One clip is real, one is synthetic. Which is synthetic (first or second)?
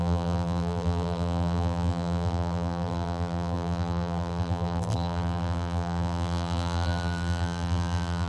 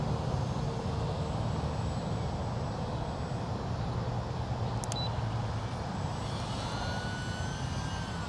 first